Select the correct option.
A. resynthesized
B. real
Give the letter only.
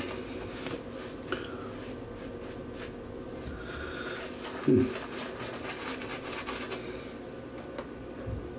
B